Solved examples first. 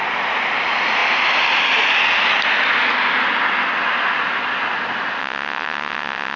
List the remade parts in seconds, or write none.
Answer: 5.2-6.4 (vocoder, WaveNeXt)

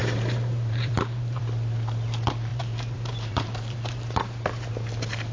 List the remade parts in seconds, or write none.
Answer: 0.0-1.4 (vocoder, BigVGAN v2); 2.5-4.7